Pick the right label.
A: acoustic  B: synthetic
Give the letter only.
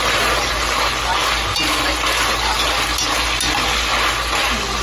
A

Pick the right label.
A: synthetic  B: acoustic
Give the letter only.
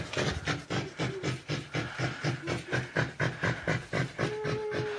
B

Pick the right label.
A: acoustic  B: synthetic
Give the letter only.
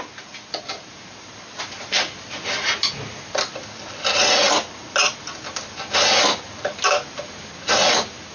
A